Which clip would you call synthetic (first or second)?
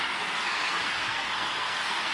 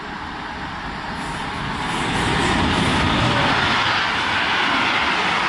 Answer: first